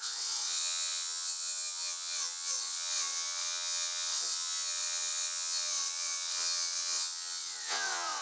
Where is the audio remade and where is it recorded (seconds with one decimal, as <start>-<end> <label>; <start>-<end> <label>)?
0.0-8.2 remade